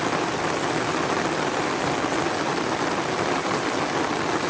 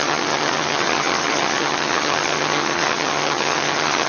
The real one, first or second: first